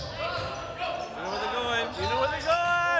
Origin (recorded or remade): recorded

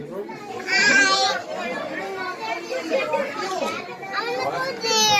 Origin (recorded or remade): recorded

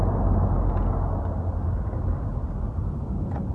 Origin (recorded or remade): recorded